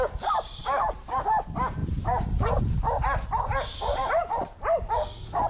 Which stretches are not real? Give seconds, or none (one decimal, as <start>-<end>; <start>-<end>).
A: 0.6-1.2; 1.8-2.6; 3.5-4.8